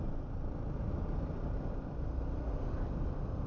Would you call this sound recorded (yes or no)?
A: yes